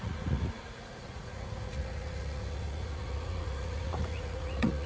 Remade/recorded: remade